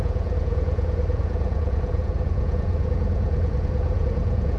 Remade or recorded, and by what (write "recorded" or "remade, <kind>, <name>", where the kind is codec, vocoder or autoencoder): remade, vocoder, Vocos